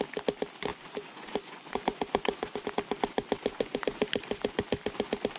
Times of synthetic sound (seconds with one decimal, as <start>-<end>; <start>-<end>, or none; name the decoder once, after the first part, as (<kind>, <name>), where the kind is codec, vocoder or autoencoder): 0.7-2.6 (vocoder, Vocos); 3.5-4.1